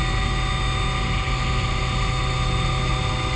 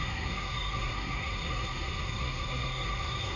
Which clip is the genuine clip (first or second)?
first